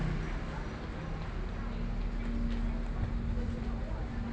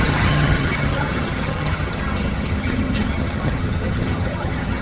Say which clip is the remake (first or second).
second